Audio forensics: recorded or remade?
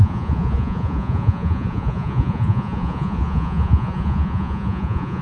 remade